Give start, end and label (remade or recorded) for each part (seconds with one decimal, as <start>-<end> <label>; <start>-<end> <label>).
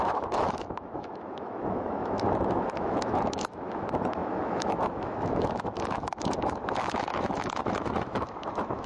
0.0-8.9 remade